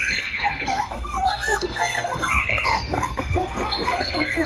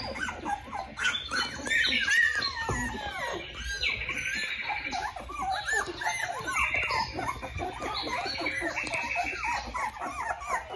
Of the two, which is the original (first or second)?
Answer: second